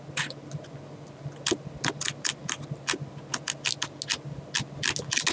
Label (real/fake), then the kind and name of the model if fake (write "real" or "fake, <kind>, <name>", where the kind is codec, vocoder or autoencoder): real